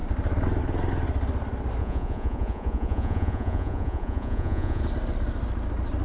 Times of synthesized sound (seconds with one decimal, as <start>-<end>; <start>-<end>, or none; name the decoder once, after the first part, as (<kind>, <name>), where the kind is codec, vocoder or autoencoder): 1.8-4.8 (vocoder, Vocos)